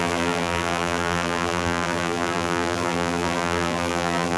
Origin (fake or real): fake